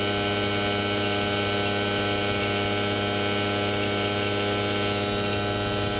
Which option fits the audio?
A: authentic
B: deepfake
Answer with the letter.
A